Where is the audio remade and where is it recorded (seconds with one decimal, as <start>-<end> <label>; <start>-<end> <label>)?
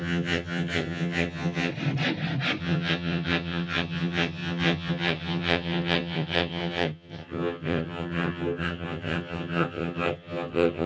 0.0-1.7 remade; 1.7-2.6 recorded; 2.6-10.9 remade